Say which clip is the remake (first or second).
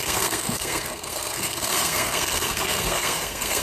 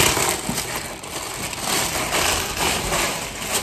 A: first